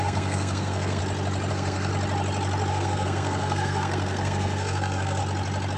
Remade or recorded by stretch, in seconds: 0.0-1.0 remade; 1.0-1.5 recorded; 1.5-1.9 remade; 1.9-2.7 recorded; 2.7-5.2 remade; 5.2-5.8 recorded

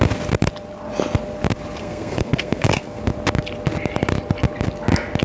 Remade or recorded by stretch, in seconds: 0.0-1.8 recorded; 1.8-3.0 remade; 3.0-5.2 recorded

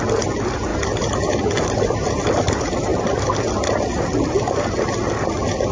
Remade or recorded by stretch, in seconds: 0.0-5.7 recorded

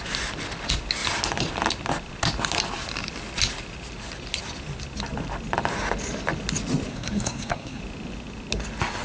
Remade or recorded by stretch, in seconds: 0.0-6.9 recorded; 6.9-7.8 remade; 7.8-9.0 recorded

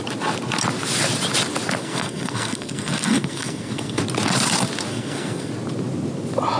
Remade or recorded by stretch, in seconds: 0.0-1.8 recorded; 1.8-4.0 remade; 4.0-4.9 recorded; 4.9-5.5 remade; 5.5-6.6 recorded